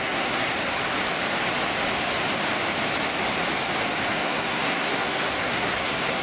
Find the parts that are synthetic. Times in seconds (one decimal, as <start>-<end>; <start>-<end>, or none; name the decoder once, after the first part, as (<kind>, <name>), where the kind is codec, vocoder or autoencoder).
0.0-0.5 (codec, SNAC); 4.1-6.2